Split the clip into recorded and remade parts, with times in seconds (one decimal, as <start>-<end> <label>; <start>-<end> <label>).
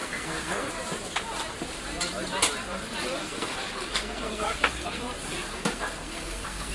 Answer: 0.0-0.7 remade; 0.7-3.2 recorded; 3.2-6.7 remade